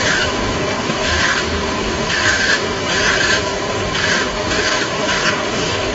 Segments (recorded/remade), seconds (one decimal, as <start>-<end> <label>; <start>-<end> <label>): 0.0-2.8 remade; 2.8-3.4 recorded; 3.4-5.9 remade